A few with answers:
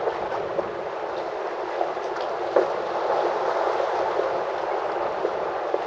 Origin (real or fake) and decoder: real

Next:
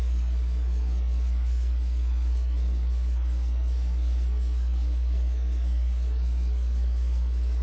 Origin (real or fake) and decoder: fake, codec, SNAC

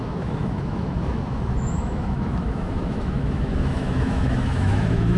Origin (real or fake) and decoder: fake, autoencoder, DAC-VAE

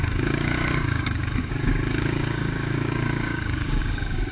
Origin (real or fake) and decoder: fake, codec, DAC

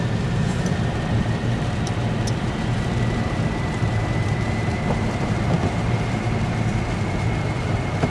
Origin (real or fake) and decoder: fake, vocoder, BigVGAN v2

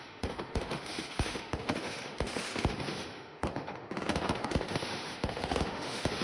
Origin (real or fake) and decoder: fake, autoencoder, DAC-VAE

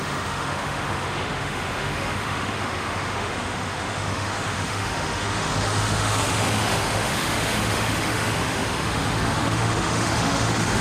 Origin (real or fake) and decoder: fake, autoencoder, DAC-VAE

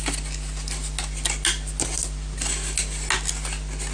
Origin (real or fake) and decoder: real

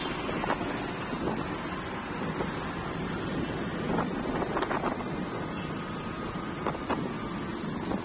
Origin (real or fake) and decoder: real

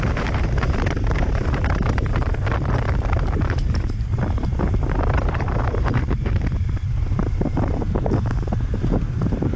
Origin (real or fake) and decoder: fake, vocoder, BigVGAN v2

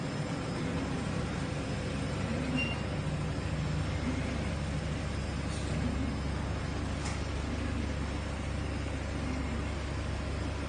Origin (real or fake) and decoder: real